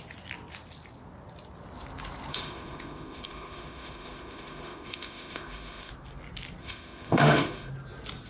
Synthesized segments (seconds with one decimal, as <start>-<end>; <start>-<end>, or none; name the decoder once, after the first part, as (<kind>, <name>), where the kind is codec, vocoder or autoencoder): 2.3-5.9 (autoencoder, DAC-VAE); 6.6-7.7